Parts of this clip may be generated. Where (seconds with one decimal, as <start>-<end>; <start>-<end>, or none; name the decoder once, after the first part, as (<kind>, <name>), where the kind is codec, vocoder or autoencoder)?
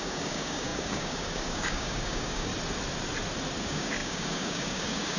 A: 0.0-2.5 (codec, DAC); 3.6-5.2